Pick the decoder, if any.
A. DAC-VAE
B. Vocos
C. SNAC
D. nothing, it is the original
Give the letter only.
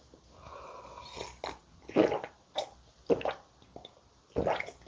D